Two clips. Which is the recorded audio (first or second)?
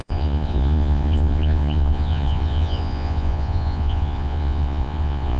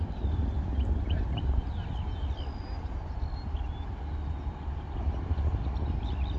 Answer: second